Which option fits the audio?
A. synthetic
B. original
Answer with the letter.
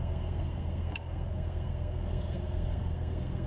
A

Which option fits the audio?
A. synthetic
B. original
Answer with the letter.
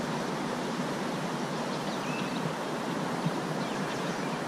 A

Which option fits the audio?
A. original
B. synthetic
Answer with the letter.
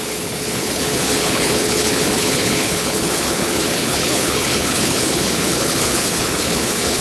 B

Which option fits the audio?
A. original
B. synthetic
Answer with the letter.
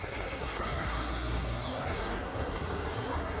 B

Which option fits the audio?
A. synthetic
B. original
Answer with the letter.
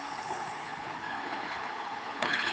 A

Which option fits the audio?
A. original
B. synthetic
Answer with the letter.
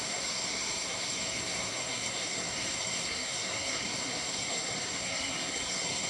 B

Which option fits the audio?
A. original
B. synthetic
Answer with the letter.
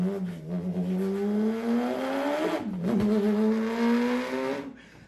A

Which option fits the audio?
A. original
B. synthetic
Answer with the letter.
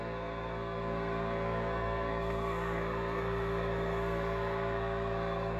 B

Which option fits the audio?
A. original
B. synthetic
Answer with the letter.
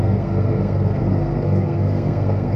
B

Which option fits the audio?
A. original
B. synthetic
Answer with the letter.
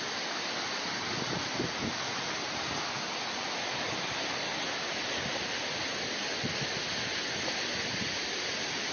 A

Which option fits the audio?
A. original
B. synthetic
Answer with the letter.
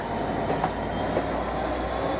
A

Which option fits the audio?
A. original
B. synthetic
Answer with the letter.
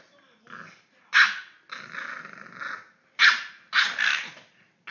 A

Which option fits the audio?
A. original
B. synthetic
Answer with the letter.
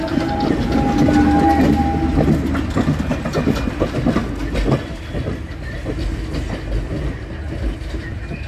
A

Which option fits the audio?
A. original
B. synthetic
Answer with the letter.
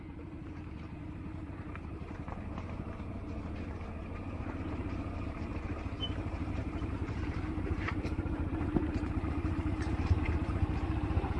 B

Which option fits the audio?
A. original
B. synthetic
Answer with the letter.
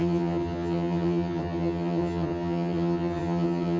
B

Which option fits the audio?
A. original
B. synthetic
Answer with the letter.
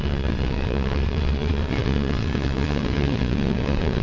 B